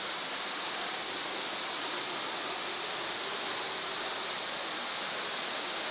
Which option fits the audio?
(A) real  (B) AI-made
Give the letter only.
A